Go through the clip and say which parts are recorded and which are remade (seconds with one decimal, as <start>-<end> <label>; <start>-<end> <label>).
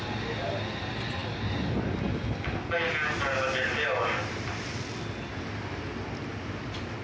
0.0-7.0 recorded